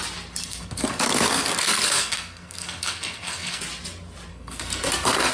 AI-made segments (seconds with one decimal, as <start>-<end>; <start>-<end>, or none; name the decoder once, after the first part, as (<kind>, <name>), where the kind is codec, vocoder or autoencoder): 0.4-3.6 (codec, SNAC); 4.3-5.3